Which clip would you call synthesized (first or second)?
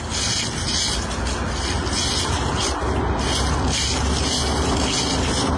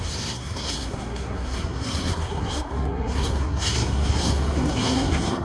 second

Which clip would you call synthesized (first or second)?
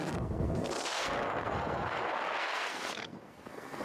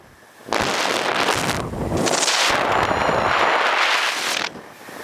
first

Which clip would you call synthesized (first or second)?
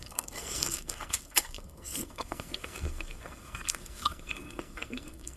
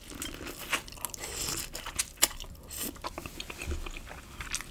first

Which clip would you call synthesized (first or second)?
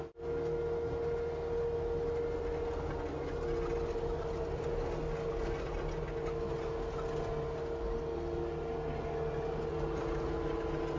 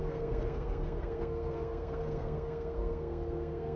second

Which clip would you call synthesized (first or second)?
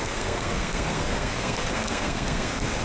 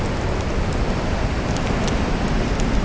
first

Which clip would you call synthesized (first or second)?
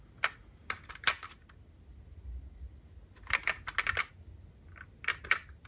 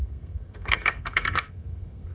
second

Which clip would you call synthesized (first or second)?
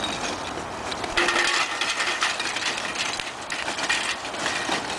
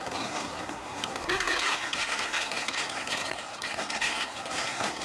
second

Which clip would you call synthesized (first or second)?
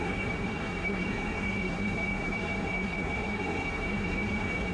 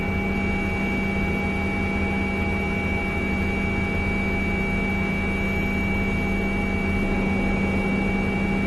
first